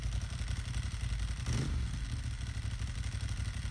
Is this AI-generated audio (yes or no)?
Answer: no